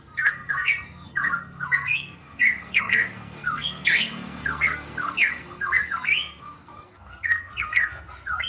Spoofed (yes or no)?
yes